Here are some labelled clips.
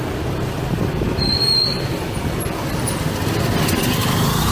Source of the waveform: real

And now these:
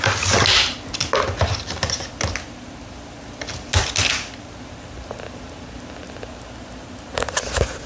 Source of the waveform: real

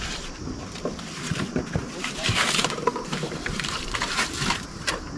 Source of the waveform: fake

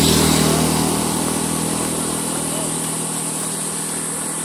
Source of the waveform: real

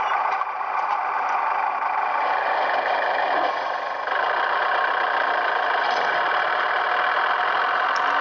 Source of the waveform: fake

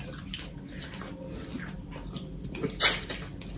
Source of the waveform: real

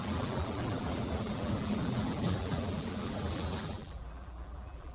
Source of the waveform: fake